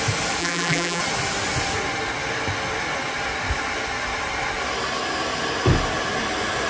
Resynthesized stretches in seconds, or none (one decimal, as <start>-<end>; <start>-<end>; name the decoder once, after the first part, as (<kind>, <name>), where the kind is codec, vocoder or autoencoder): 0.4-1.0 (vocoder, BigVGAN v2)